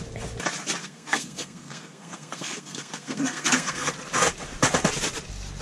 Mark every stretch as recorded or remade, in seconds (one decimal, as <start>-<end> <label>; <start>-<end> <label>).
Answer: 0.0-0.8 recorded; 0.8-3.9 remade; 3.9-5.6 recorded